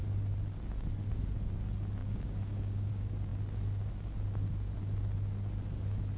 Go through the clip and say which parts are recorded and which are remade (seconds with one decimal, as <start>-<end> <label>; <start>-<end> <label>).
0.0-2.0 recorded; 2.0-2.9 remade; 2.9-6.2 recorded

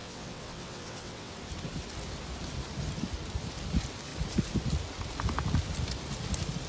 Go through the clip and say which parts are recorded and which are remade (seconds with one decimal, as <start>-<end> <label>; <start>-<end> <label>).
0.0-1.3 remade; 1.3-6.7 recorded